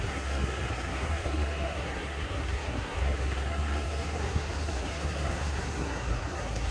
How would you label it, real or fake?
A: fake